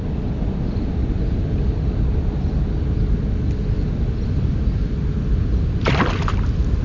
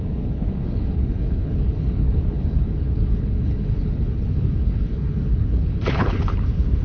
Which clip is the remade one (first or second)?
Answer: second